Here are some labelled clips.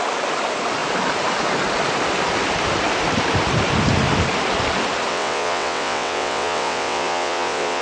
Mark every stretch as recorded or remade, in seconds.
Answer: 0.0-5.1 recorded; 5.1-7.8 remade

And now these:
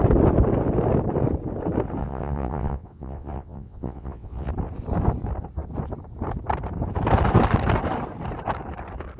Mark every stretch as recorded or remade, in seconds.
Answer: 0.0-2.0 recorded; 2.0-4.5 remade; 4.5-9.2 recorded

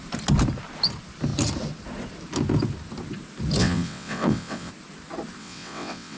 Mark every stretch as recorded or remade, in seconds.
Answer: 0.0-3.6 recorded; 3.6-4.7 remade; 4.7-5.4 recorded; 5.4-6.2 remade

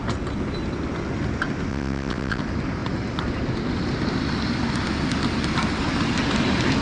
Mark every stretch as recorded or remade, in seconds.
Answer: 0.0-1.7 recorded; 1.7-2.4 remade; 2.4-6.8 recorded

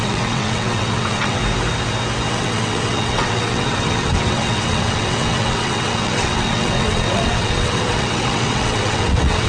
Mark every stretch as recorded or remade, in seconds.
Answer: 0.0-1.4 remade; 1.4-2.3 recorded; 2.3-9.5 remade

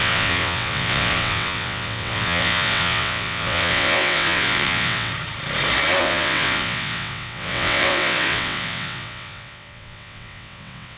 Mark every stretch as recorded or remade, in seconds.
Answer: 0.0-5.1 remade; 5.1-6.0 recorded; 6.0-11.0 remade